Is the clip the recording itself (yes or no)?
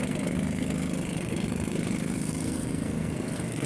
no